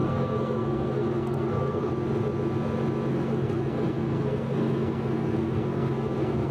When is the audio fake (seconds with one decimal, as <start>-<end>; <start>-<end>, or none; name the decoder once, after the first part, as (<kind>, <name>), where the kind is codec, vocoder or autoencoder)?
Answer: 0.0-1.9 (codec, SNAC); 3.1-6.5